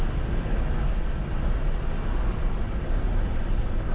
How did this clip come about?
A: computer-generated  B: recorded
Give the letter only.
B